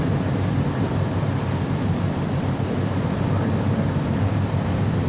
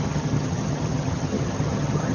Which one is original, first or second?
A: first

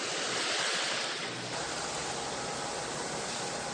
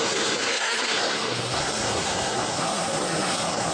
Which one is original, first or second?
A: first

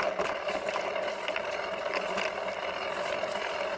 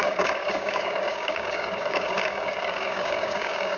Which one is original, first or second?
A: first